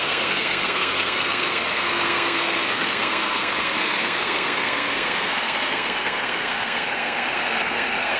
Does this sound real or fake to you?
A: fake